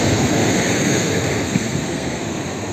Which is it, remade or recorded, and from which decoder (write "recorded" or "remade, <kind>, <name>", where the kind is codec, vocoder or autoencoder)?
remade, codec, SNAC